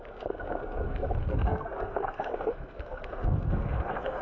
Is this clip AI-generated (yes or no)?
yes